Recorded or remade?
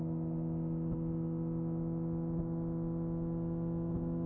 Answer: recorded